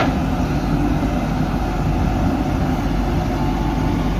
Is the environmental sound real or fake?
real